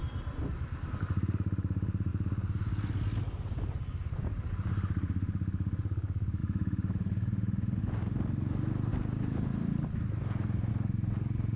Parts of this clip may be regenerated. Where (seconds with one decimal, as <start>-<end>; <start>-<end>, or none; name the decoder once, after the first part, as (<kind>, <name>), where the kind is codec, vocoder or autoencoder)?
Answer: 6.4-7.8 (vocoder, BigVGAN v2); 8.9-10.7